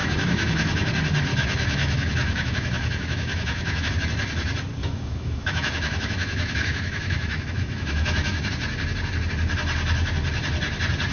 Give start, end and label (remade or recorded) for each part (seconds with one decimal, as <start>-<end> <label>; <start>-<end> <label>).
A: 0.0-0.9 remade; 0.9-1.3 recorded; 1.3-3.9 remade; 3.9-4.8 recorded; 4.8-8.5 remade; 8.5-11.1 recorded